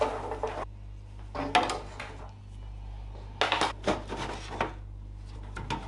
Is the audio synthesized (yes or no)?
no